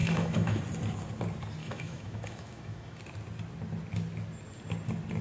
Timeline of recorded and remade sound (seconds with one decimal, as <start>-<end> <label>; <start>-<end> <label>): 0.0-0.6 remade; 0.6-1.6 recorded; 1.6-3.0 remade; 3.0-5.2 recorded